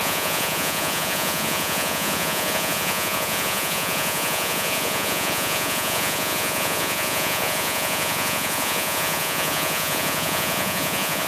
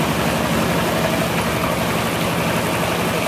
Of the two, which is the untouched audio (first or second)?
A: second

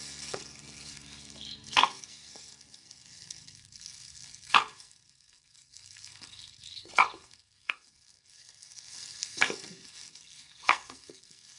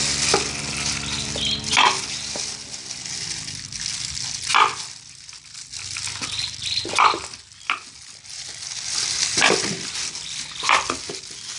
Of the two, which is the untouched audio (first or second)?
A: second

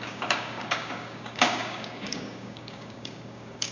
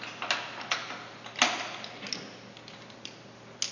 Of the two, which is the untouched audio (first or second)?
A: second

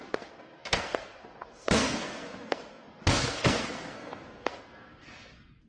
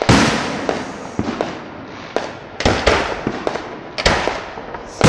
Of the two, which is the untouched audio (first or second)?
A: second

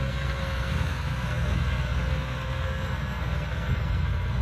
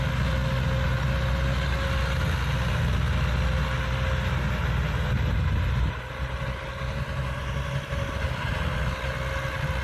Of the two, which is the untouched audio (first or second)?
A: second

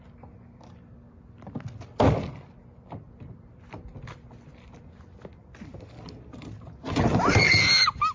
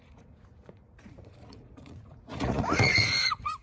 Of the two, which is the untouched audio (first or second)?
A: first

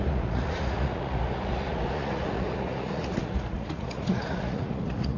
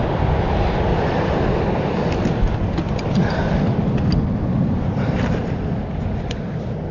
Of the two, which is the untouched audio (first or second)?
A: second